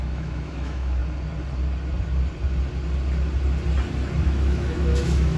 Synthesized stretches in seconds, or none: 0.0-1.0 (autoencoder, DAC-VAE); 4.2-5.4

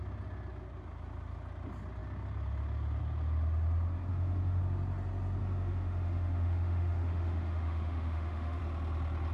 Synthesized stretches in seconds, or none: 4.1-4.6 (autoencoder, DAC-VAE); 5.4-8.6